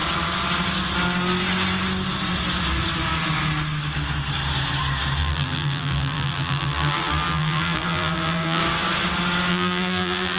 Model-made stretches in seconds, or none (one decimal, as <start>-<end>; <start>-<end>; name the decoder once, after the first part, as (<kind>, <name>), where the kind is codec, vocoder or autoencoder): 5.2-8.6 (vocoder, BigVGAN v2); 9.5-10.4